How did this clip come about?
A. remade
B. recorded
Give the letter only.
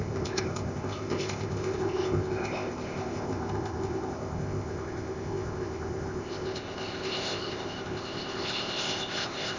A